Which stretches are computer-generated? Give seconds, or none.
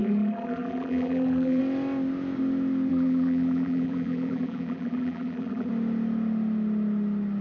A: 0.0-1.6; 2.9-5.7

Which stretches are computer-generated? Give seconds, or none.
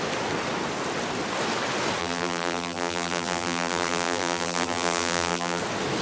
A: 2.0-5.6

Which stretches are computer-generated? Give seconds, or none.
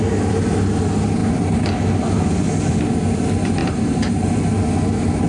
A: 3.6-4.2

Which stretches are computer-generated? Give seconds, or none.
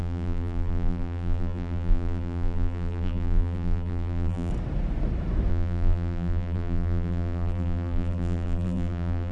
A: 0.0-4.5; 5.5-9.3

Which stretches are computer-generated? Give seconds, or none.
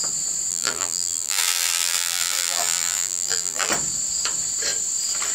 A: 0.5-3.7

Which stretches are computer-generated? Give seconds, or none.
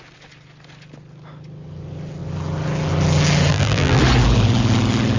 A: 3.5-4.0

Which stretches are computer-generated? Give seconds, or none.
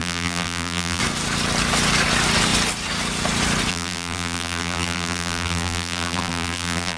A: 0.0-1.0; 3.7-7.0